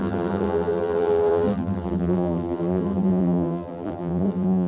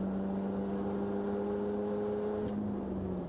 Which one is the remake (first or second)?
first